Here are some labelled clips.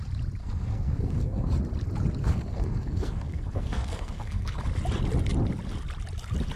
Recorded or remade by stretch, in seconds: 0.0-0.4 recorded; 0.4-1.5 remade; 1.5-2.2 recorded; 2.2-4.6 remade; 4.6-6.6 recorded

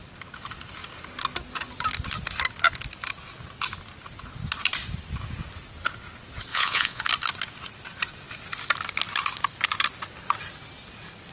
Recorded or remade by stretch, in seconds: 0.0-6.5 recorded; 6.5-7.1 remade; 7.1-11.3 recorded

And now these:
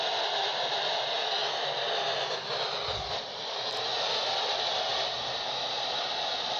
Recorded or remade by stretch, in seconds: 0.0-6.6 recorded

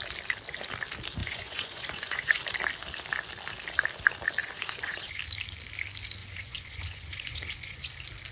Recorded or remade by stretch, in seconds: 0.0-1.2 recorded; 1.2-2.4 remade; 2.4-4.4 recorded; 4.4-5.2 remade; 5.2-6.2 recorded; 6.2-7.9 remade; 7.9-8.3 recorded

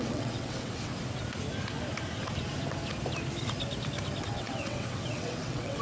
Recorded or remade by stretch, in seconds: 0.0-0.9 remade; 0.9-4.2 recorded; 4.2-5.8 remade

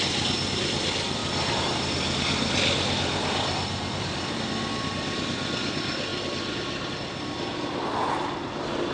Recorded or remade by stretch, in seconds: 0.0-8.9 recorded